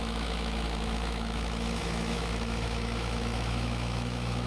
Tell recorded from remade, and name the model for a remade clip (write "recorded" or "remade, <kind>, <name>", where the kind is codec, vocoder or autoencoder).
remade, autoencoder, DAC-VAE